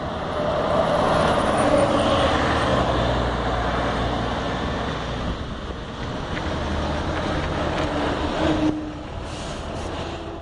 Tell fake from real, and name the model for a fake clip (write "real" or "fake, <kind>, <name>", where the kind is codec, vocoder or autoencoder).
real